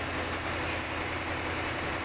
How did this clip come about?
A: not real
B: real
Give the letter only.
B